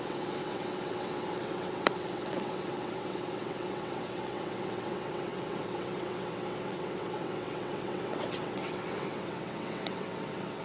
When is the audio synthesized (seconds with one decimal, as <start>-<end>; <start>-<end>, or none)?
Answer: 0.0-10.6